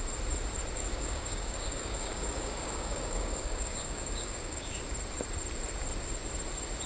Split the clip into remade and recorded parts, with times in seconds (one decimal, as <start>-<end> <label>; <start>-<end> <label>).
0.0-0.8 recorded; 0.8-4.8 remade; 4.8-6.9 recorded